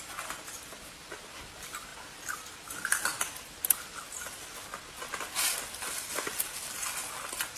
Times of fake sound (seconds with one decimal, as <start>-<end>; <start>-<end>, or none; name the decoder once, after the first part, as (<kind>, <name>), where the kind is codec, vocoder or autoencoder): none